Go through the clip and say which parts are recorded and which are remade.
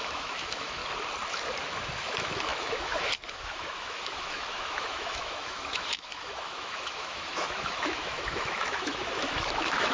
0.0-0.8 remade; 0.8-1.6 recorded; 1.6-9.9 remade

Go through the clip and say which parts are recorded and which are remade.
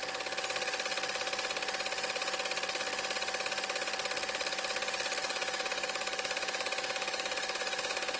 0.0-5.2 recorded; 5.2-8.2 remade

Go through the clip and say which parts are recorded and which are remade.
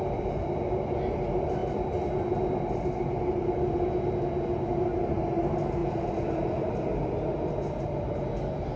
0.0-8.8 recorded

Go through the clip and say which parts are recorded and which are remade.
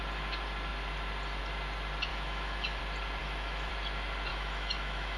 0.0-2.1 recorded; 2.1-2.8 remade; 2.8-3.2 recorded; 3.2-3.7 remade; 3.7-4.3 recorded; 4.3-5.2 remade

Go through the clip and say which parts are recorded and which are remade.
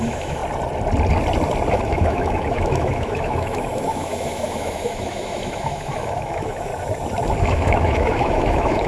0.0-0.4 remade; 0.4-1.7 recorded; 1.7-6.7 remade; 6.7-7.4 recorded; 7.4-8.9 remade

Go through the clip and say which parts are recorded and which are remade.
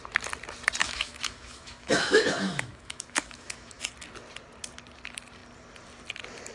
0.0-0.8 recorded; 0.8-3.8 remade; 3.8-6.5 recorded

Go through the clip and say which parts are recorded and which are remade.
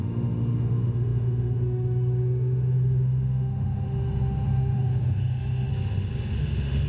0.0-5.7 remade; 5.7-6.4 recorded; 6.4-6.9 remade